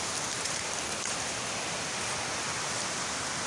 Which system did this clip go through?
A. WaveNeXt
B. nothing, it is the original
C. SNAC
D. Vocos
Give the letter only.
B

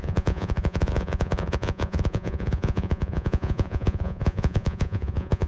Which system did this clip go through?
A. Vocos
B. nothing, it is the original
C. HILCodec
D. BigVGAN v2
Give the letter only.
A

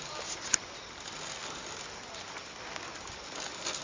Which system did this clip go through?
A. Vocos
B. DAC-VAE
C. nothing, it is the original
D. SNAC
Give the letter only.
C